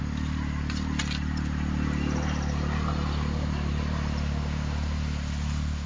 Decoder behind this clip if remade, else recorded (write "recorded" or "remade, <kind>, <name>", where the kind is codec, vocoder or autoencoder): recorded